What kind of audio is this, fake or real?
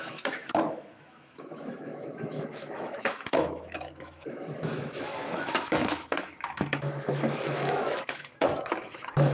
fake